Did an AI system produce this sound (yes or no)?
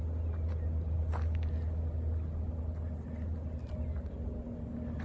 no